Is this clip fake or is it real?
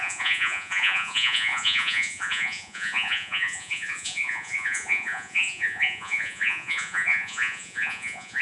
fake